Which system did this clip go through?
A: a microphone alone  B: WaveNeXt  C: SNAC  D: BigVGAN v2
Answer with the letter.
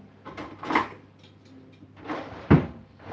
A